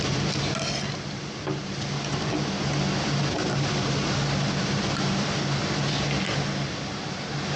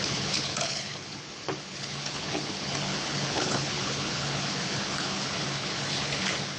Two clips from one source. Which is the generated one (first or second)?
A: second